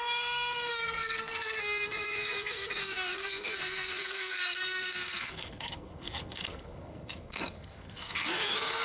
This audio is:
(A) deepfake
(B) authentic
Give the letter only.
A